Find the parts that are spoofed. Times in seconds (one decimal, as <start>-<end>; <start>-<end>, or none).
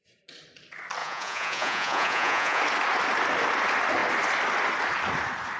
1.0-2.6